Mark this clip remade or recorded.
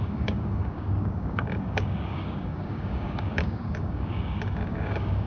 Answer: remade